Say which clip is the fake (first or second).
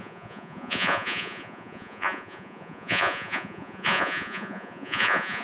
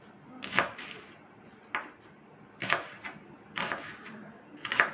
first